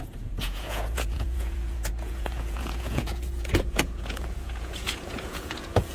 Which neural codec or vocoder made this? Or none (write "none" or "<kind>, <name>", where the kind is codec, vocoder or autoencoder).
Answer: vocoder, Vocos